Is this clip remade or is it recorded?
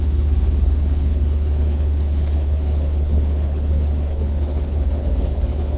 remade